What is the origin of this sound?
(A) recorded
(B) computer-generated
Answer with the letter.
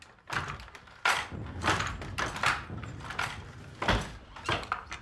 A